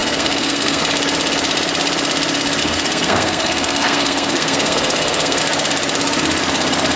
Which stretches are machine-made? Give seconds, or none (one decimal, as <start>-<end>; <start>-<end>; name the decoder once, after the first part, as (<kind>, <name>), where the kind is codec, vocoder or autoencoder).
0.0-0.8 (codec, SNAC); 2.6-5.4